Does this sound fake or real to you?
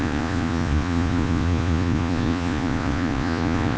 fake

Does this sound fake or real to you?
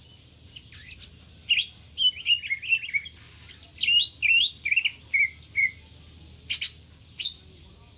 real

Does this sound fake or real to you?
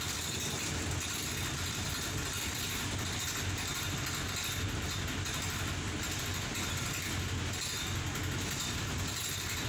real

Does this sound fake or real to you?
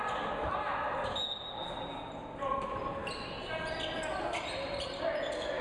real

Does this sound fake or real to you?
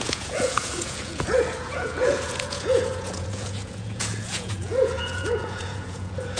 fake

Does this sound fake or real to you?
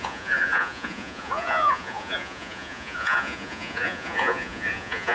fake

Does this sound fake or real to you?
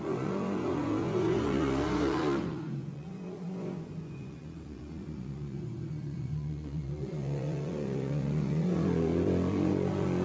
fake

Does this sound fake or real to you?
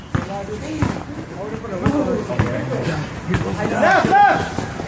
real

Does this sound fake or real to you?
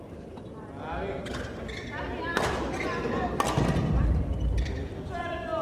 real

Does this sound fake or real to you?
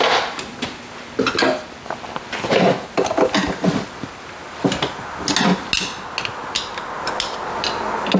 real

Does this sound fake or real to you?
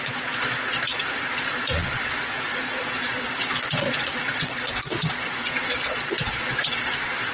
fake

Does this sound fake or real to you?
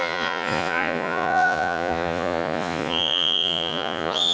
fake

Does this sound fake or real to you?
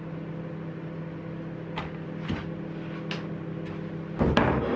real